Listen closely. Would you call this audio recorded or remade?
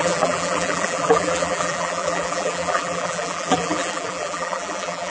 remade